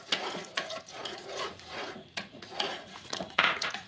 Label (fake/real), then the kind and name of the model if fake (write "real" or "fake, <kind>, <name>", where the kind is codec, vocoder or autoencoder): fake, vocoder, Vocos